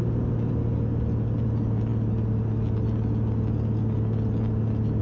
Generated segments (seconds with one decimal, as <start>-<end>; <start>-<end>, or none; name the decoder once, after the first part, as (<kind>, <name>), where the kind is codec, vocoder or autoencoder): none